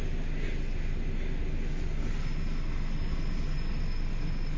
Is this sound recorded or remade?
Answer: recorded